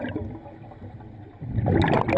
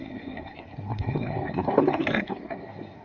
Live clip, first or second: first